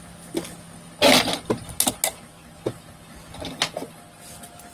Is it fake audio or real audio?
real